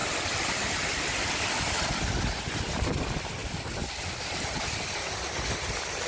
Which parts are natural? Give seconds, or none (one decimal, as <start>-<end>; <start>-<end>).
0.0-6.1